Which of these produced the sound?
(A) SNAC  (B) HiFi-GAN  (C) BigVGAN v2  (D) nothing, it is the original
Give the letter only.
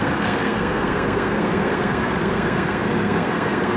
A